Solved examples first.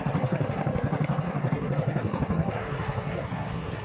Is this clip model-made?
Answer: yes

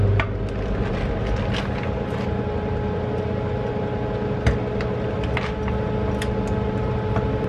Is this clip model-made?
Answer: no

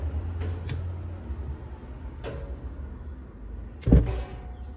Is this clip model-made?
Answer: no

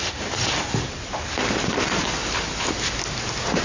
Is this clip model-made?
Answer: no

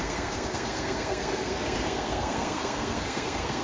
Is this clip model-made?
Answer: yes